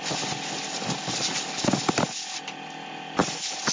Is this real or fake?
real